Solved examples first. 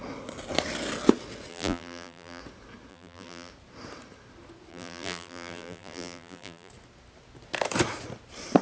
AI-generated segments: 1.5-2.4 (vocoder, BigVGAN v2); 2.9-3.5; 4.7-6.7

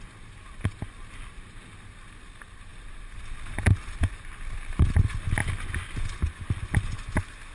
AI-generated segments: none

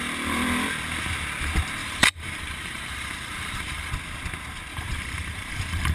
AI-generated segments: 1.8-3.9 (vocoder, BigVGAN v2); 4.7-5.9

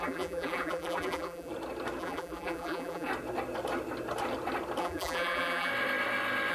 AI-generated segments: 0.0-1.5 (vocoder, BigVGAN v2); 2.0-3.1; 4.8-5.7

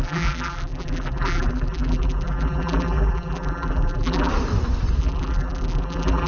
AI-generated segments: 0.0-4.3 (vocoder, BigVGAN v2); 5.0-6.3

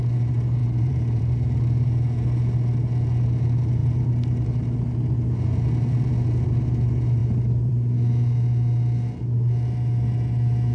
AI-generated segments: 0.6-1.2 (vocoder, BigVGAN v2)

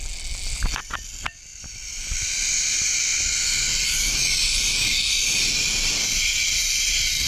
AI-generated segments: 1.5-2.5 (vocoder, BigVGAN v2)